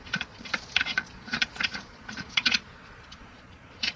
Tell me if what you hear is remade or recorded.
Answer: remade